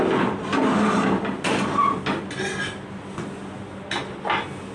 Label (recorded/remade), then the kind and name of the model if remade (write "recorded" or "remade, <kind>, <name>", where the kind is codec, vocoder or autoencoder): recorded